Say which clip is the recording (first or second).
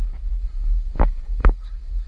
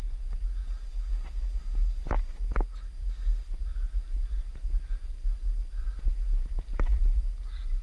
second